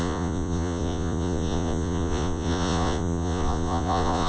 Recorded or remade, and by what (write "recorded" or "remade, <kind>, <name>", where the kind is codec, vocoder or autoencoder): remade, vocoder, Vocos